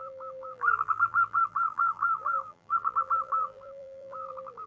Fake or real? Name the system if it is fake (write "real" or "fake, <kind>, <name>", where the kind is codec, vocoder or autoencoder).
fake, vocoder, BigVGAN v2